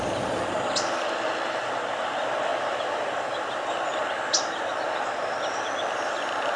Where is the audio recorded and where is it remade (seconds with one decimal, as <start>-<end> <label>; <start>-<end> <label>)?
0.0-6.6 recorded